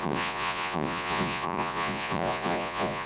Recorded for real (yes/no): no